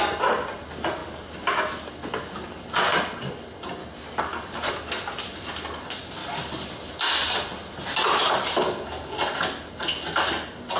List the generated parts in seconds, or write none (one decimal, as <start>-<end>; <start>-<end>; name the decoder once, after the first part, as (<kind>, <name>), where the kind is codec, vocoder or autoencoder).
3.8-4.7 (codec, DAC)